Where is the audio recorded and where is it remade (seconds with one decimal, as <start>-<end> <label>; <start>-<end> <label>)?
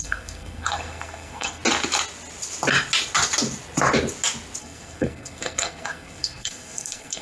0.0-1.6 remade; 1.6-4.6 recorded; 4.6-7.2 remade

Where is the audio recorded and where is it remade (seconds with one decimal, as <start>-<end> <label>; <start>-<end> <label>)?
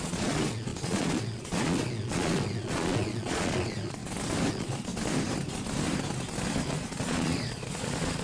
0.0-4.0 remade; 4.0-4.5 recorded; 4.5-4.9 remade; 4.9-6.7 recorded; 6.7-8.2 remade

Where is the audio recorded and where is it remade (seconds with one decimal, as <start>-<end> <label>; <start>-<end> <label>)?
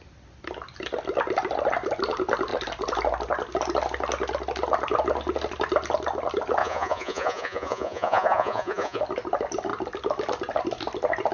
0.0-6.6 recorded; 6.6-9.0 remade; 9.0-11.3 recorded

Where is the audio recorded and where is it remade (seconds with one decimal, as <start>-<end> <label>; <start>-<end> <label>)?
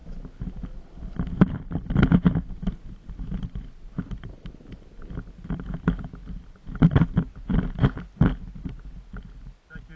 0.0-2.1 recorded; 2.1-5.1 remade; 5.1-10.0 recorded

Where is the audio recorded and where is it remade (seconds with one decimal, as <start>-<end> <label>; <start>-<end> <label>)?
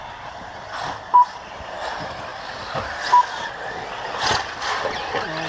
0.0-5.5 recorded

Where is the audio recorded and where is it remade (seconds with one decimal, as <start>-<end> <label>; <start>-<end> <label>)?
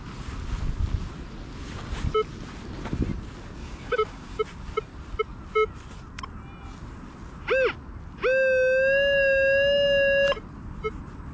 0.0-3.6 recorded; 3.6-4.4 remade; 4.4-11.3 recorded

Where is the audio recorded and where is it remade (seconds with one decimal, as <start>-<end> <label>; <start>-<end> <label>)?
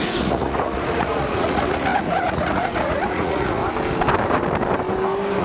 0.0-3.6 remade; 3.6-5.4 recorded